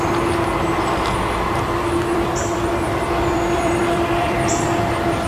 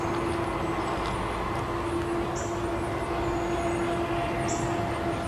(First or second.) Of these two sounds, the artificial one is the first